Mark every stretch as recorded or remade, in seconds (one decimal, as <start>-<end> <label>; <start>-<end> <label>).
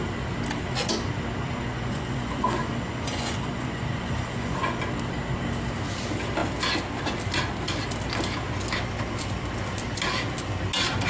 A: 0.0-1.5 recorded; 1.5-4.8 remade; 4.8-11.1 recorded